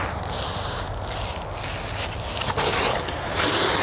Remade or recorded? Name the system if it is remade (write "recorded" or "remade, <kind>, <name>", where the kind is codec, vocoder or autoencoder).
recorded